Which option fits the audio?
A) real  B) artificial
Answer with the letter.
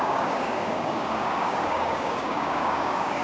B